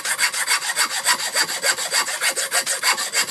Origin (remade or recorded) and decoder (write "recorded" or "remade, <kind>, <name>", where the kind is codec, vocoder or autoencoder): recorded